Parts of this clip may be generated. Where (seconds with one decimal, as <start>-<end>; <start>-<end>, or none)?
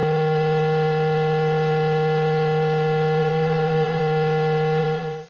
3.2-4.0; 4.8-5.3